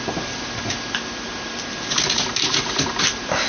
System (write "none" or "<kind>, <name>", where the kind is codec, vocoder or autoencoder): none